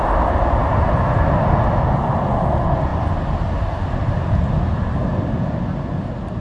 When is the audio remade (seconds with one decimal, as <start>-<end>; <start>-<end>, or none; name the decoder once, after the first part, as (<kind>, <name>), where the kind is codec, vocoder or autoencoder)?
none